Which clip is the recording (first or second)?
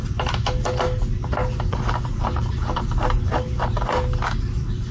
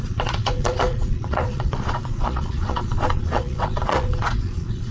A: first